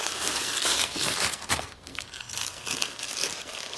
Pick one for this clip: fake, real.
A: fake